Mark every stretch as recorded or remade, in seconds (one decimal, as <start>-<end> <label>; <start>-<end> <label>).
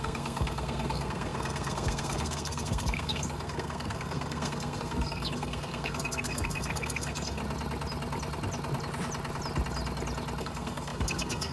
0.0-7.4 remade; 7.4-10.4 recorded; 10.4-11.5 remade